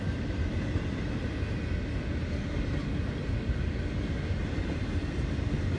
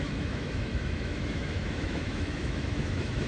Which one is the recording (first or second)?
first